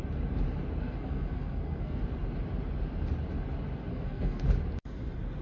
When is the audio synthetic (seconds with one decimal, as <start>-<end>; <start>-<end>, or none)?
0.8-2.0; 3.9-4.4